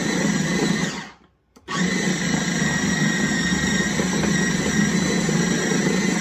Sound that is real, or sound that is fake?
real